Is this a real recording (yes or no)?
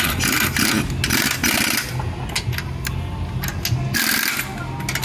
yes